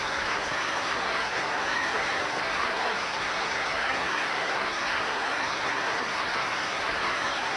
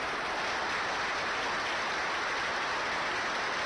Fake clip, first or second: first